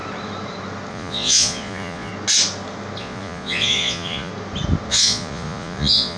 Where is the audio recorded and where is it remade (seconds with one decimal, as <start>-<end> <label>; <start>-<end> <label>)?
0.0-0.9 recorded; 0.9-2.1 remade; 2.1-3.0 recorded; 3.0-4.3 remade; 4.3-4.9 recorded; 4.9-6.2 remade

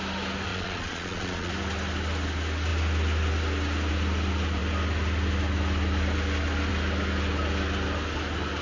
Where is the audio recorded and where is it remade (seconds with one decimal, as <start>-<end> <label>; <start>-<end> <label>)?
0.0-0.5 recorded; 0.5-1.5 remade; 1.5-8.6 recorded

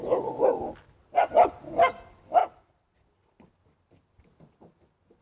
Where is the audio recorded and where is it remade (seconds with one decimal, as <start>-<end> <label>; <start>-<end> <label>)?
0.0-5.2 recorded

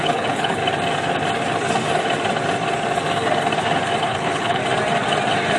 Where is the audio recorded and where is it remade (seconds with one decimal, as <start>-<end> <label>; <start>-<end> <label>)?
0.0-0.6 remade; 0.6-4.0 recorded; 4.0-4.6 remade; 4.6-5.6 recorded